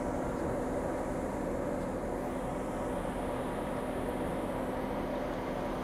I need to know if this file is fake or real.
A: real